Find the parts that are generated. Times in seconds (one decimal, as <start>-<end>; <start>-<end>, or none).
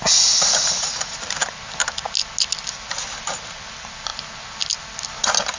none